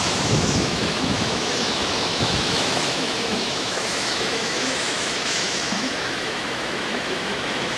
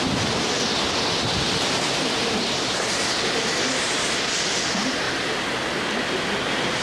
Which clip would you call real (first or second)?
second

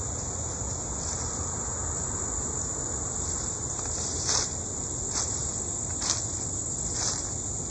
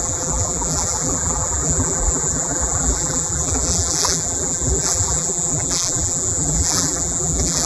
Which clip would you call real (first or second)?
first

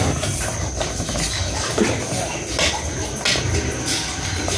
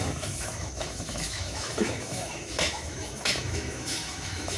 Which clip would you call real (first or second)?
first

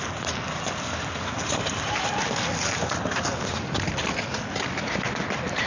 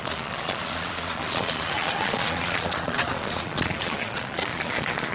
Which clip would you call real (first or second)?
first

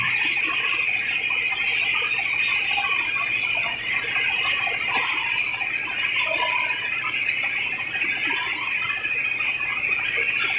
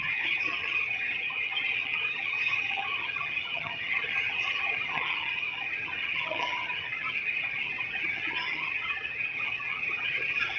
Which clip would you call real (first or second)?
first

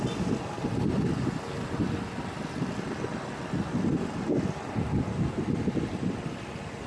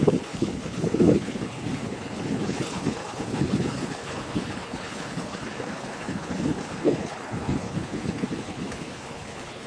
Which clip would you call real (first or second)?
first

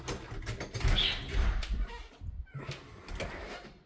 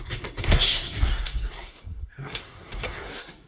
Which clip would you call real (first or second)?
first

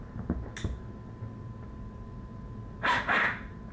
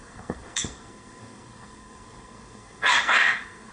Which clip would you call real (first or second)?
first